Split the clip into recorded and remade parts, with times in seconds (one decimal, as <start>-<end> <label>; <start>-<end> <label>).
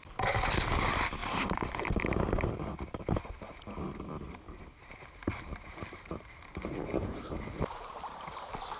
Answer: 0.0-1.2 recorded; 1.2-1.9 remade; 1.9-4.8 recorded; 4.8-8.0 remade; 8.0-8.8 recorded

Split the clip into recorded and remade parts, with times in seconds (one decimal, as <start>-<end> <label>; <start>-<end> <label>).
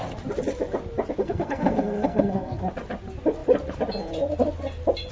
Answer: 0.0-1.2 recorded; 1.2-2.6 remade; 2.6-5.1 recorded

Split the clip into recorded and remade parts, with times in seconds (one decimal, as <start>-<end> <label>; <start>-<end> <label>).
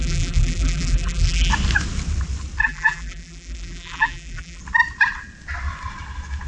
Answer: 0.0-1.5 remade; 1.5-2.6 recorded; 2.6-4.6 remade; 4.6-6.5 recorded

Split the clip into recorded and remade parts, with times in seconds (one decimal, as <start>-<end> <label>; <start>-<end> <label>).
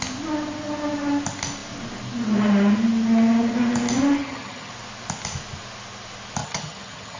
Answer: 0.0-4.2 recorded; 4.2-4.7 remade; 4.7-6.4 recorded; 6.4-7.2 remade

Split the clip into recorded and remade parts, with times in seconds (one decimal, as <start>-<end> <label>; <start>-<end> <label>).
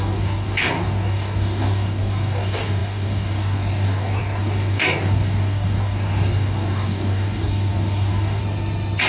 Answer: 0.0-8.4 remade; 8.4-9.1 recorded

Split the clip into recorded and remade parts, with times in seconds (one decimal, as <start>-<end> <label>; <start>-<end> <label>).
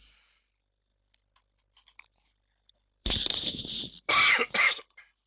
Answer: 0.0-5.3 remade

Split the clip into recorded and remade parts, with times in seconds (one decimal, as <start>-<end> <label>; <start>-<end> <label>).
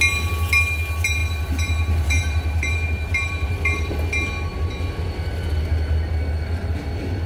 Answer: 0.0-1.2 recorded; 1.2-3.9 remade; 3.9-6.6 recorded; 6.6-7.3 remade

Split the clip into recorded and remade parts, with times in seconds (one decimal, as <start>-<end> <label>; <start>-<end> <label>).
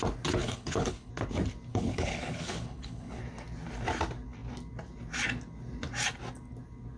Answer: 0.0-0.4 recorded; 0.4-1.1 remade; 1.1-1.7 recorded; 1.7-3.2 remade; 3.2-7.0 recorded